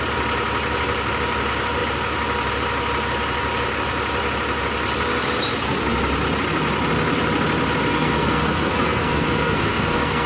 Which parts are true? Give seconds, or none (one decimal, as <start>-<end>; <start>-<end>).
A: 0.0-7.9